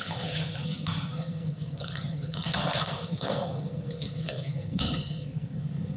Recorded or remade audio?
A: remade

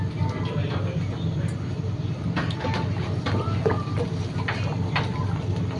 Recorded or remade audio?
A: recorded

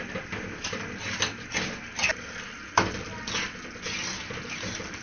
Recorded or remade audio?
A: recorded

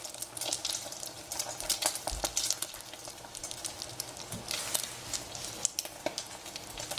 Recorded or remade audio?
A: recorded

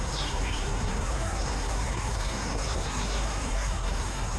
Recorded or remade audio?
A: remade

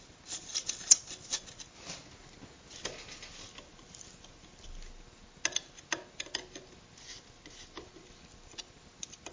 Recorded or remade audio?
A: recorded